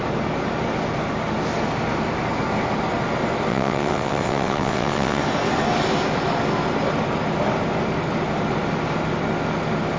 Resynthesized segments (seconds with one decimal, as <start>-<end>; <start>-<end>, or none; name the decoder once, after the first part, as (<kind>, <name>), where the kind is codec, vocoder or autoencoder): 3.5-5.2 (vocoder, WaveNeXt)

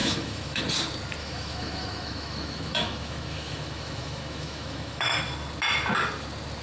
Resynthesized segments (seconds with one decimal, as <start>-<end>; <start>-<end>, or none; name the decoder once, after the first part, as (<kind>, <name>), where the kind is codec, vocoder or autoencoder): 0.0-0.6 (autoencoder, DAC-VAE); 1.2-5.2

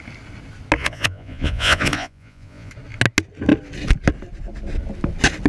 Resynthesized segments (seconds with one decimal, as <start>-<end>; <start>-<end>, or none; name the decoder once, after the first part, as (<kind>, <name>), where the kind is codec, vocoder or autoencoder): 0.8-2.7 (vocoder, Vocos)

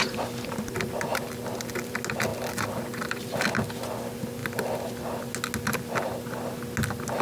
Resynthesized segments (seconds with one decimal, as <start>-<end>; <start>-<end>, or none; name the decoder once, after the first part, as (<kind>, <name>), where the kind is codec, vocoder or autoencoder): 1.1-1.9 (vocoder, BigVGAN v2); 2.3-3.3

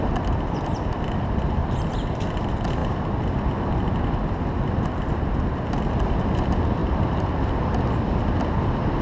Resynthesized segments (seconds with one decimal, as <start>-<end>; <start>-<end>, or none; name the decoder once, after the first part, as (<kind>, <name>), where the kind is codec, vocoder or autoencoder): 1.6-2.2 (vocoder, BigVGAN v2); 2.8-3.4

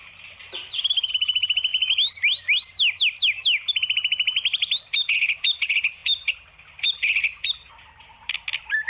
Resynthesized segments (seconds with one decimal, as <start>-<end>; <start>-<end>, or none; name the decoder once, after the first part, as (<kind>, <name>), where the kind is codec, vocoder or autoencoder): none

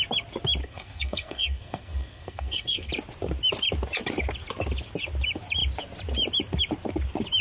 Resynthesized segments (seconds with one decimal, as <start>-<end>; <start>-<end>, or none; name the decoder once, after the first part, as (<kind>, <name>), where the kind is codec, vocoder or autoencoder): 0.6-2.9 (codec, SNAC)